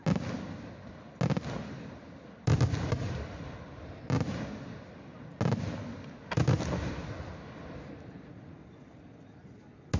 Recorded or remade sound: recorded